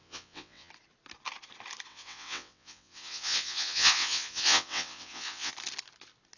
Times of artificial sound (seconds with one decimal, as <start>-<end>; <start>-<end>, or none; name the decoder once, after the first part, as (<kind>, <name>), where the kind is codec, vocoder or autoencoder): 0.0-0.7 (vocoder, WaveNeXt); 1.9-5.5